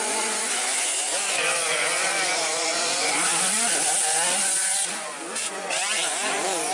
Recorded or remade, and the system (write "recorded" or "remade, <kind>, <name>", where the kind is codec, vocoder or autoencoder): remade, vocoder, Vocos